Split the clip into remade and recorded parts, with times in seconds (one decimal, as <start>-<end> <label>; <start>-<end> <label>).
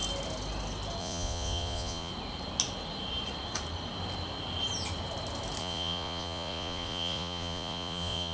0.0-1.0 recorded; 1.0-2.1 remade; 2.1-5.6 recorded; 5.6-8.3 remade